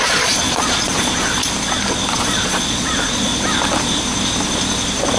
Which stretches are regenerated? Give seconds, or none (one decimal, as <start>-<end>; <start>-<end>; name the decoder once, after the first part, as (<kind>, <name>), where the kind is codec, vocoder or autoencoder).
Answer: 0.0-1.4 (vocoder, Vocos); 2.1-3.3